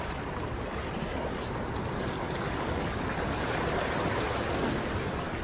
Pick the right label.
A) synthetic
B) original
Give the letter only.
B